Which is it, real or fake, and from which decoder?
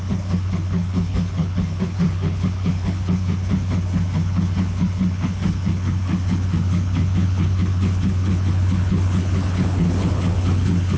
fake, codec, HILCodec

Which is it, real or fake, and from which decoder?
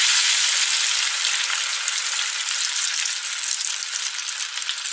real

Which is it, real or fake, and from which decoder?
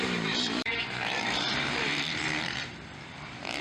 fake, vocoder, BigVGAN v2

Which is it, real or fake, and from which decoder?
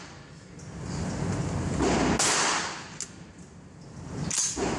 real